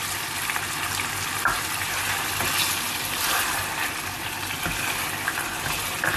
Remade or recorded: recorded